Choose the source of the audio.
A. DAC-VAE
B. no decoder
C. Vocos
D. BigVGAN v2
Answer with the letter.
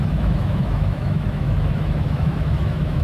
A